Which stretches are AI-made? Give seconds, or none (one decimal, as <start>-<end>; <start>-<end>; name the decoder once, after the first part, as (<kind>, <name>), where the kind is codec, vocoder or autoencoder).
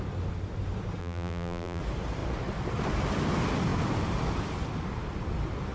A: 1.0-1.8 (vocoder, BigVGAN v2)